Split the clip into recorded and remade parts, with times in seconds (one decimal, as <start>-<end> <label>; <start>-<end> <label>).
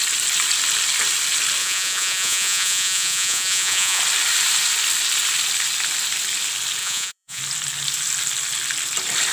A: 0.0-1.6 recorded; 1.6-4.0 remade; 4.0-6.8 recorded; 6.8-7.4 remade; 7.4-9.3 recorded